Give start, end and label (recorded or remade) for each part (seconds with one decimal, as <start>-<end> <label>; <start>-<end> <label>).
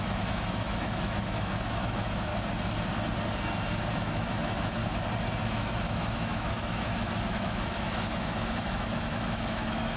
0.0-2.3 remade; 2.3-3.9 recorded; 3.9-4.8 remade; 4.8-5.4 recorded; 5.4-10.0 remade